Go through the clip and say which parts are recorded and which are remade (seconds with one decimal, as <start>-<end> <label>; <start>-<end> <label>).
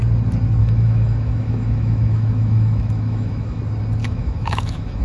0.0-0.6 recorded; 0.6-3.6 remade; 3.6-4.0 recorded; 4.0-5.0 remade